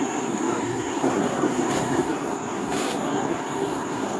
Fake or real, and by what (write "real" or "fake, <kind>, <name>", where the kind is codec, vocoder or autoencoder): fake, codec, SNAC